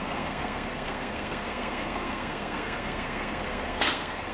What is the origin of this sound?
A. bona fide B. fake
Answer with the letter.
B